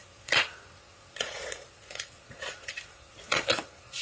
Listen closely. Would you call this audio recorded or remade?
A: remade